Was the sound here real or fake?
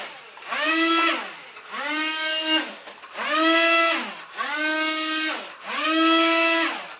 real